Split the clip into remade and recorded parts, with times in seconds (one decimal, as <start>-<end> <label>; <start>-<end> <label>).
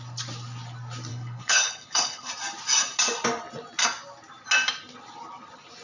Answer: 0.0-1.1 recorded; 1.1-2.3 remade; 2.3-5.8 recorded